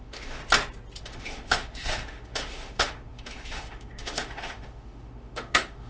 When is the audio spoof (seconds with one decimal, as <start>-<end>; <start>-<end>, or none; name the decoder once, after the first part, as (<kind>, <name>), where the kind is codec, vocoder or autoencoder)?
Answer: 0.0-0.4 (autoencoder, DAC-VAE); 1.0-5.9